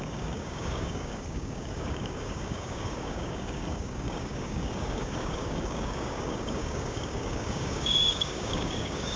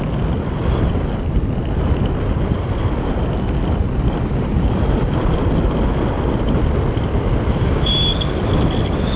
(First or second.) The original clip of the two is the second